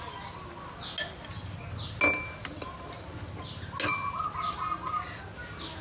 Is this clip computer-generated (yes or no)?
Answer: no